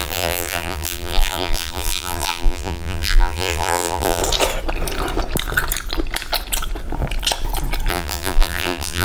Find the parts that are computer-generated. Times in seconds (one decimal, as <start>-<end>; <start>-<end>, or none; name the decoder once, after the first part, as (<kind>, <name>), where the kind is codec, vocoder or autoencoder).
0.0-4.2 (vocoder, BigVGAN v2); 7.9-9.0